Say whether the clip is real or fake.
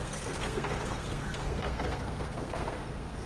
fake